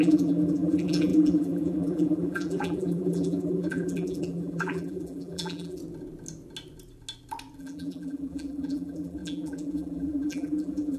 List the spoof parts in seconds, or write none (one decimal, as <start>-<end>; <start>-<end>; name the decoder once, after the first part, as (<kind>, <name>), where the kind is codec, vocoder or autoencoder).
0.0-5.8 (vocoder, BigVGAN v2); 7.6-11.0